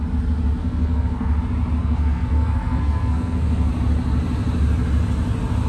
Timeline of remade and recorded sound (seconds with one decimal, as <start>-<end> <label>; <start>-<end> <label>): 0.0-0.6 recorded; 0.6-1.4 remade; 1.4-1.8 recorded; 1.8-3.7 remade; 3.7-5.7 recorded